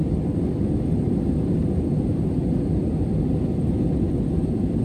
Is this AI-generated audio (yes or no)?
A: no